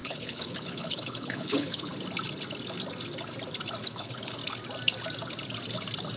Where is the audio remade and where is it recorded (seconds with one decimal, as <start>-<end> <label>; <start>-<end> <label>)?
0.0-1.9 remade; 1.9-3.8 recorded; 3.8-4.4 remade; 4.4-6.2 recorded